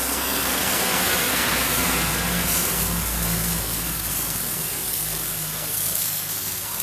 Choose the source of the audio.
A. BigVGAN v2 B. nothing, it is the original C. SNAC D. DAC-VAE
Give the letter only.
C